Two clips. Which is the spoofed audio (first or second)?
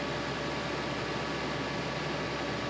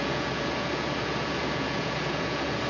second